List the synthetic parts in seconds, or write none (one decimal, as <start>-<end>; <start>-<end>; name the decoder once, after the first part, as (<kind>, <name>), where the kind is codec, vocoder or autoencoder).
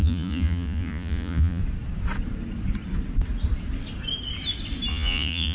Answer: 0.0-1.6 (vocoder, Vocos); 4.9-5.5